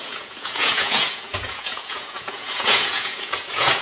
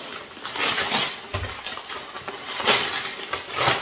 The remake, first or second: first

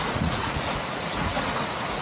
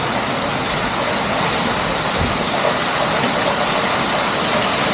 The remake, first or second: first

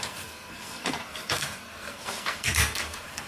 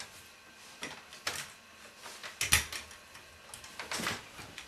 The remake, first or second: first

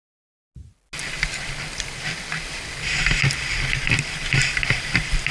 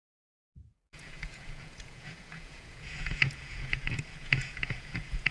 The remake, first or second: second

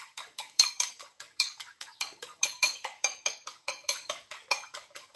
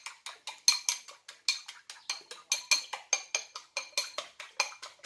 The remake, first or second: first